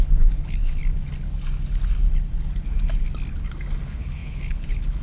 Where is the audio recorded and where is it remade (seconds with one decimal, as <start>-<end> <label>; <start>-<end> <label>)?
0.0-0.8 remade; 0.8-3.8 recorded; 3.8-5.0 remade